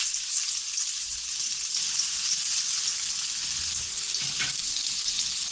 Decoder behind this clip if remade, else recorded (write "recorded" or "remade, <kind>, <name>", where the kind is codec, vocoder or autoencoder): recorded